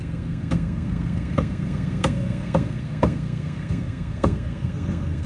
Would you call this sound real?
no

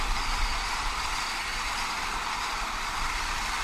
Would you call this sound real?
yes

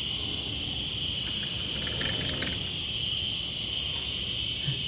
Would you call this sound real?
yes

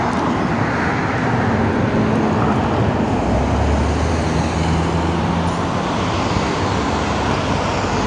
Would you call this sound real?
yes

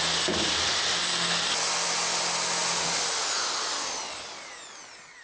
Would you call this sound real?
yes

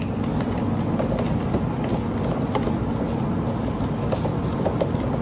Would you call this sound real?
yes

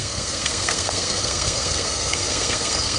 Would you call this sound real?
no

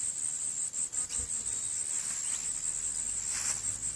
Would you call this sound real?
yes